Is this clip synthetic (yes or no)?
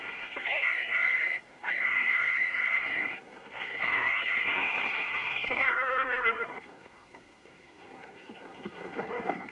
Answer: yes